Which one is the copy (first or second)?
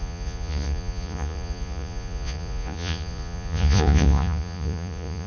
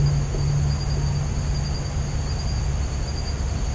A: first